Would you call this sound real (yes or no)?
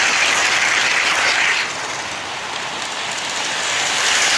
yes